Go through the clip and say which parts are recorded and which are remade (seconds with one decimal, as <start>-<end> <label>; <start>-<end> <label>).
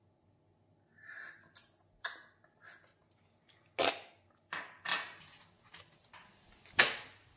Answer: 0.0-7.4 recorded